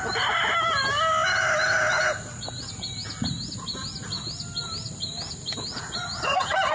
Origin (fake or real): real